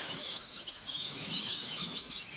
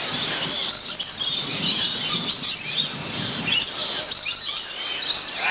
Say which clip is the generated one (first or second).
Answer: first